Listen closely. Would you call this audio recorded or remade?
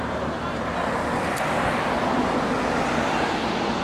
recorded